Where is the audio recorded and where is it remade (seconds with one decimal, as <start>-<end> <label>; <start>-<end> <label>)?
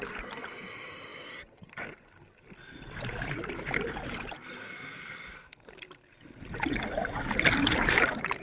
0.0-8.4 recorded